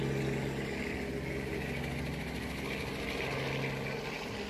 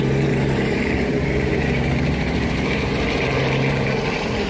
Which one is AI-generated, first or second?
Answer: second